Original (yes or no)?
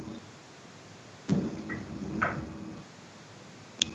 yes